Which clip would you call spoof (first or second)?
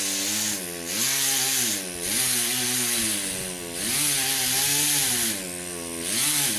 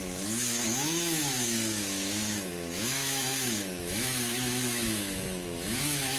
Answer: second